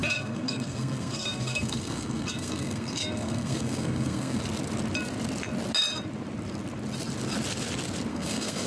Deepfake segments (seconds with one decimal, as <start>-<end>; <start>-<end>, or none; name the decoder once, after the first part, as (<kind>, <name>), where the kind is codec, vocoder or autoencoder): 0.0-4.4 (codec, SNAC); 8.1-8.7